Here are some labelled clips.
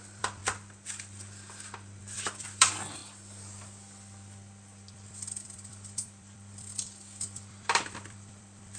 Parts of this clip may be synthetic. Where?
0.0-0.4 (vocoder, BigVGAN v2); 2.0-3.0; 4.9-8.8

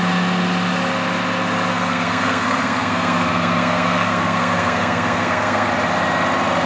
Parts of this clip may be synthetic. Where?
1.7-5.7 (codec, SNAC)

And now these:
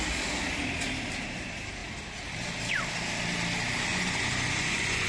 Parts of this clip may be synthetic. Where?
3.9-5.1 (vocoder, Vocos)

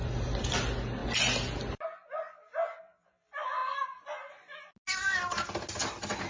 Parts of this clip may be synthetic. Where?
none

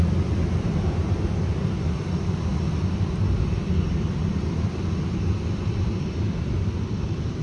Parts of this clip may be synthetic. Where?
none

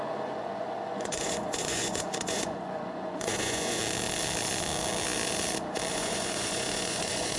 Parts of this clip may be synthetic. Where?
0.0-3.8 (vocoder, Vocos); 5.9-7.4